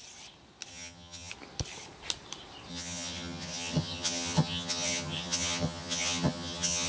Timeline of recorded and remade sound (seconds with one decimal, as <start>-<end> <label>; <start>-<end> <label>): 0.0-0.7 recorded; 0.7-1.3 remade; 1.3-2.7 recorded; 2.7-6.9 remade